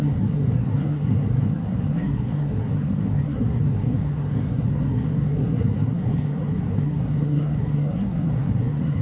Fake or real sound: fake